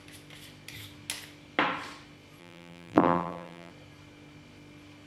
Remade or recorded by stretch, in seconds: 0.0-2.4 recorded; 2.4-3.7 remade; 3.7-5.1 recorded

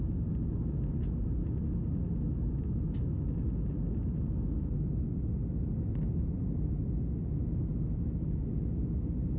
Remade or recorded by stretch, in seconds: 0.0-5.4 recorded; 5.4-7.0 remade; 7.0-9.4 recorded

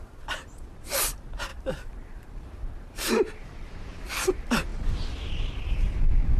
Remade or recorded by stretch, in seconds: 0.0-1.5 recorded; 1.5-4.1 remade; 4.1-6.4 recorded

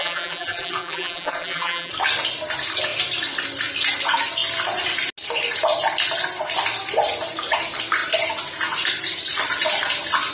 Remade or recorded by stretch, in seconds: 0.0-1.9 remade; 1.9-10.3 recorded

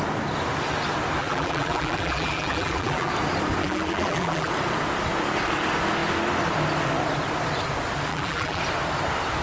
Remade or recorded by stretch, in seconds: 0.0-1.2 recorded; 1.2-3.1 remade; 3.1-3.6 recorded; 3.6-4.5 remade; 4.5-8.1 recorded; 8.1-8.6 remade; 8.6-9.4 recorded

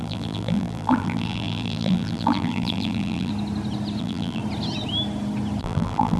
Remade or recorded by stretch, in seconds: 0.0-3.3 remade; 3.3-4.0 recorded; 4.0-4.4 remade; 4.4-5.6 recorded; 5.6-6.2 remade

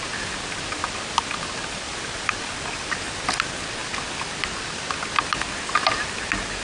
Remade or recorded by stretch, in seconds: 0.0-6.6 recorded